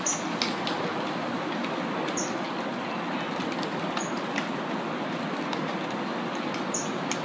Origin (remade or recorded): recorded